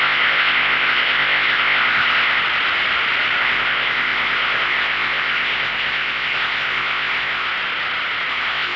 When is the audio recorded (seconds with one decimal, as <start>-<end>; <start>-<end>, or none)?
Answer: 2.4-3.4; 7.5-8.3